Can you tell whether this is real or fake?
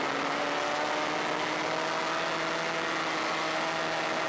real